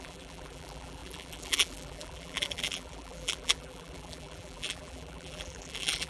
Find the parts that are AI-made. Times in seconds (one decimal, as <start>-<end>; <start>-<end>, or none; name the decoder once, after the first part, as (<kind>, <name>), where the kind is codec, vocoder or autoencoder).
0.0-6.1 (vocoder, BigVGAN v2)